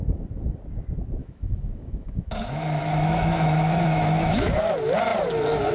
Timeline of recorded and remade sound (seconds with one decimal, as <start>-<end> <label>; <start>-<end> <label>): 0.0-1.2 recorded; 1.2-4.6 remade; 4.6-5.7 recorded